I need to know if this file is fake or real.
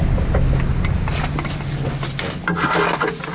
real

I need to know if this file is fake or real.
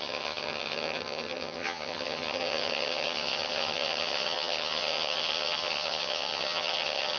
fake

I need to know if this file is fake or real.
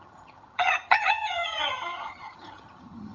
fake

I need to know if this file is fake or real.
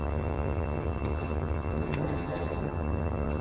fake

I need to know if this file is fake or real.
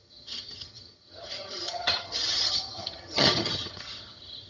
fake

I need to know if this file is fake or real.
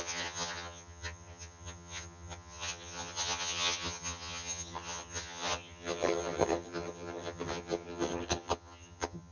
fake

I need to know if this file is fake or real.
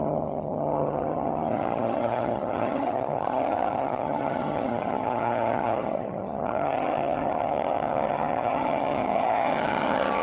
fake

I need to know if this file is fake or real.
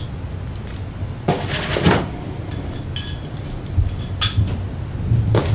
real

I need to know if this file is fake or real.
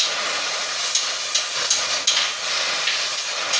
real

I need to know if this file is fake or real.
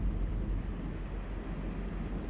real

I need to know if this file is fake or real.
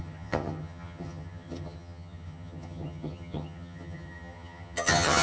fake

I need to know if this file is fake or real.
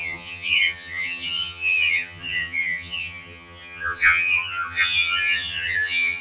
fake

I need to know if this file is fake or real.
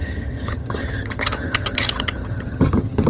fake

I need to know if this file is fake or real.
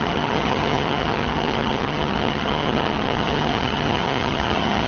fake